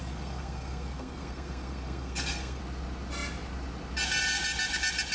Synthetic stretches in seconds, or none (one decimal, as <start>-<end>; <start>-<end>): 0.0-2.6